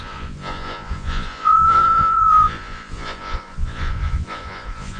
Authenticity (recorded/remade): remade